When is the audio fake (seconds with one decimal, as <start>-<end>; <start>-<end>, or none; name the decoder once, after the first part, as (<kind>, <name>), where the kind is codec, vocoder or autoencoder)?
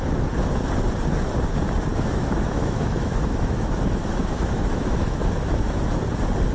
1.9-5.8 (autoencoder, DAC-VAE)